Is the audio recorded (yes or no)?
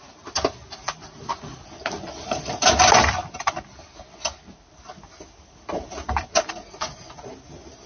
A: yes